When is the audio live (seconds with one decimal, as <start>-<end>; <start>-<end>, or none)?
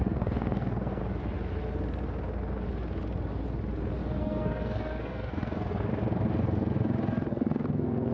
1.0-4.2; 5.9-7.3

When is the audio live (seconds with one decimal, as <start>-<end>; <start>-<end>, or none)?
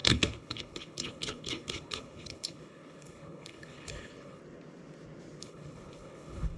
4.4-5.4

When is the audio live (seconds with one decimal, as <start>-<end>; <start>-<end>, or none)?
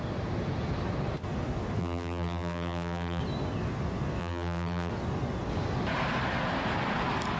0.0-1.8; 3.2-4.2; 4.9-7.4